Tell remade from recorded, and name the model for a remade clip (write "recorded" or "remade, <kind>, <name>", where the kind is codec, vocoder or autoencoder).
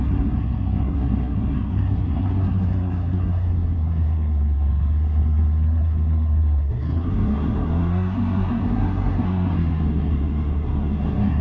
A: remade, codec, SNAC